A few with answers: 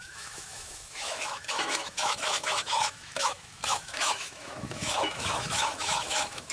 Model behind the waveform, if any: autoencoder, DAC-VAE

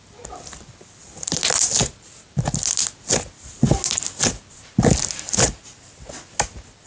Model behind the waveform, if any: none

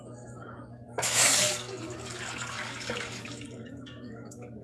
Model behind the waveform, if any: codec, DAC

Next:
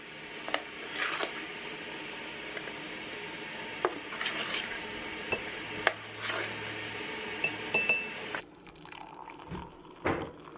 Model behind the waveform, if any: none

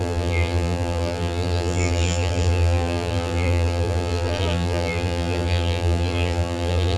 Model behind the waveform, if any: vocoder, BigVGAN v2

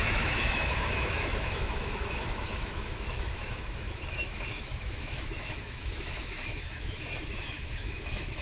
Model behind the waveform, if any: autoencoder, DAC-VAE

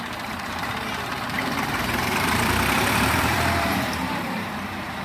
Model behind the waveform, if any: vocoder, BigVGAN v2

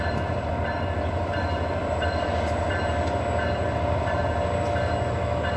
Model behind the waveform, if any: none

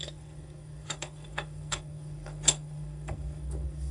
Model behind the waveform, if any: codec, SNAC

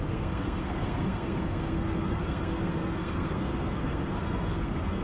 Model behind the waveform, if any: codec, SNAC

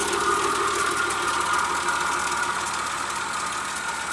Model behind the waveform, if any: none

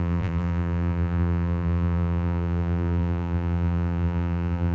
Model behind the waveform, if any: vocoder, BigVGAN v2